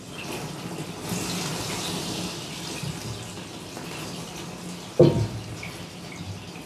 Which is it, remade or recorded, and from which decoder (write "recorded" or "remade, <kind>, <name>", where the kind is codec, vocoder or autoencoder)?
recorded